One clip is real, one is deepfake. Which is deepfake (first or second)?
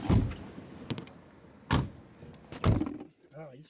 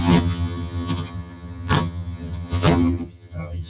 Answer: second